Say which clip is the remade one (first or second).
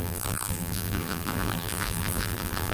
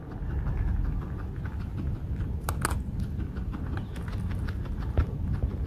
first